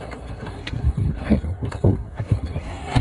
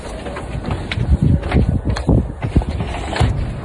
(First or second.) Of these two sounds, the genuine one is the second